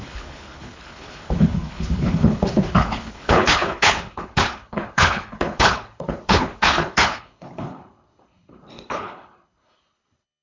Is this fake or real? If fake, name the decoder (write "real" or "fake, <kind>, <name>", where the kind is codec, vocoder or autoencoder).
fake, codec, HILCodec